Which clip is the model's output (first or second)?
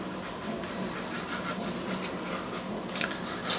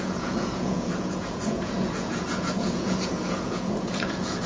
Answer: second